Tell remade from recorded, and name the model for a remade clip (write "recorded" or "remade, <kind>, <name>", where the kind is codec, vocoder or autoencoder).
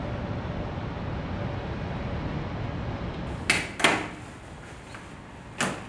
recorded